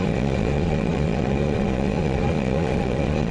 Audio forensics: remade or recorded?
remade